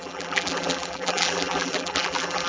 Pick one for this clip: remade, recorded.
remade